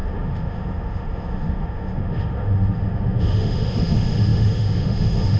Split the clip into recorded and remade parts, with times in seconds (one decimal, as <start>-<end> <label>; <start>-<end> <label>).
0.0-5.4 remade